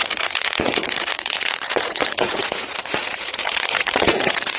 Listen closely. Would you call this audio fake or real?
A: fake